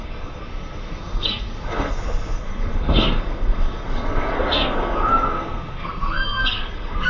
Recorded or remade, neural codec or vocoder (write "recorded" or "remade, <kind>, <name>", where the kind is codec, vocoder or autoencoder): remade, codec, SNAC